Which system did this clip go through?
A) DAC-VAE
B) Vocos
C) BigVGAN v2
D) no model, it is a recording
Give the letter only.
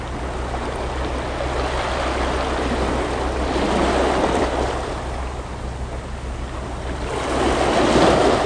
D